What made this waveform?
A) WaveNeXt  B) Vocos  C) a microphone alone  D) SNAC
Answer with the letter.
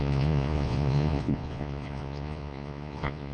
B